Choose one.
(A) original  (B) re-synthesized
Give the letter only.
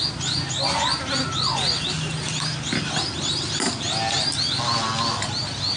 A